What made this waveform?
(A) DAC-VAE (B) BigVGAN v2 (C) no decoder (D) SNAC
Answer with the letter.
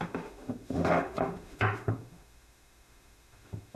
A